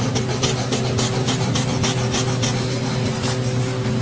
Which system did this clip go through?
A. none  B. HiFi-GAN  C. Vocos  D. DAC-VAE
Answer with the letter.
A